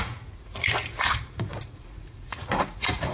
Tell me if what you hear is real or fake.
fake